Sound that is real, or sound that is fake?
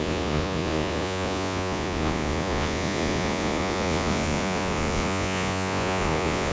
fake